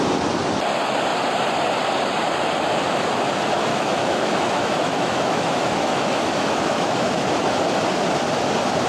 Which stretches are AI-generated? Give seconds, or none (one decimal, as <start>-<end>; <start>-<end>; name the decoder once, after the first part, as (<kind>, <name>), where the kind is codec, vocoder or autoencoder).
3.7-7.3 (autoencoder, DAC-VAE)